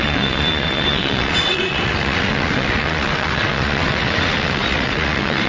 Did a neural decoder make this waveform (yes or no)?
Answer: yes